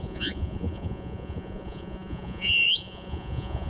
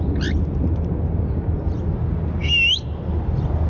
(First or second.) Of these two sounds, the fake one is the first